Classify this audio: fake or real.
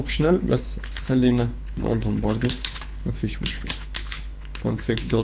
fake